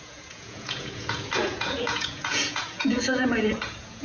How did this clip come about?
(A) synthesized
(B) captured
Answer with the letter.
A